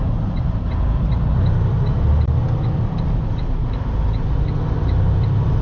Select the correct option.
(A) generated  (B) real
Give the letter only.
B